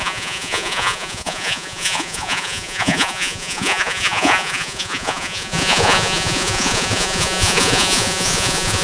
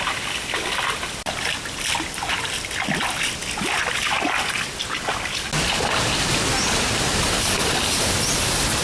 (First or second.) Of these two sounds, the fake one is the first